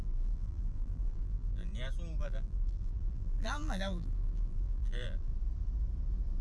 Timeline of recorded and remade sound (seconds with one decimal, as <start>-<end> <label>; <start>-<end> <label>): 0.0-1.7 remade; 1.7-2.2 recorded; 2.2-5.3 remade; 5.3-6.4 recorded